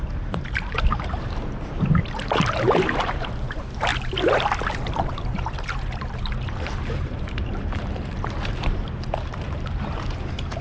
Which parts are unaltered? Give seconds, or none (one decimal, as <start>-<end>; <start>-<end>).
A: 3.9-5.0